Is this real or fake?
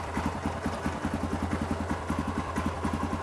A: real